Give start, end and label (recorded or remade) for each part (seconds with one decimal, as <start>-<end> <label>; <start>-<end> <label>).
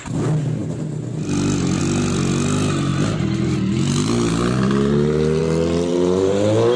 0.0-6.8 recorded